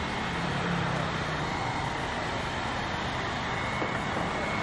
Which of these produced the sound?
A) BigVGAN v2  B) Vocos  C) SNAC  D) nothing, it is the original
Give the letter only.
D